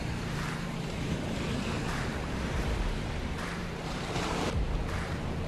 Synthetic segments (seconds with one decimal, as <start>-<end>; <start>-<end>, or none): 0.0-5.5